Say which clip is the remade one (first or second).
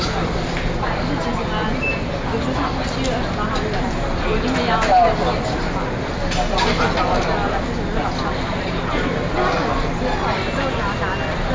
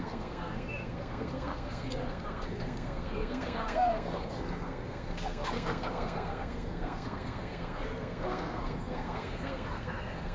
second